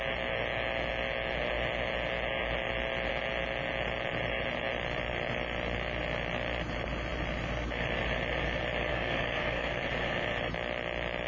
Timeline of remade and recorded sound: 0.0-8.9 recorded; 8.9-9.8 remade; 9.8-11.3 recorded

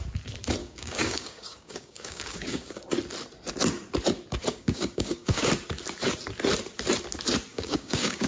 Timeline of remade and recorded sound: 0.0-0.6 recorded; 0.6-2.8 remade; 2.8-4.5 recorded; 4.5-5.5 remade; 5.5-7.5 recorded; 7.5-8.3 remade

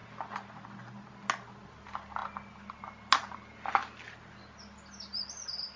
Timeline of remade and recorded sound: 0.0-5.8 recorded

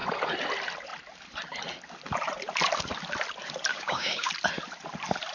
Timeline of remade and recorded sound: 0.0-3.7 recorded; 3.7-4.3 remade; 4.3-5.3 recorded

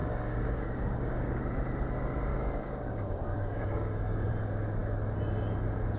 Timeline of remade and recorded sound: 0.0-1.4 remade; 1.4-2.3 recorded; 2.3-4.3 remade; 4.3-6.0 recorded

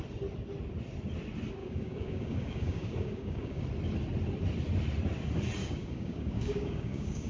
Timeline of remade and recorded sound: 0.0-1.6 recorded; 1.6-3.6 remade; 3.6-5.6 recorded; 5.6-7.3 remade

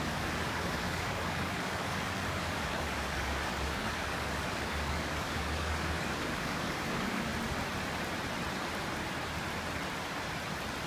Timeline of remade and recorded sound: 0.0-7.3 remade; 7.3-10.9 recorded

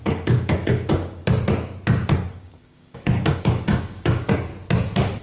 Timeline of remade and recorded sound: 0.0-1.2 remade; 1.2-2.3 recorded; 2.3-4.5 remade; 4.5-5.2 recorded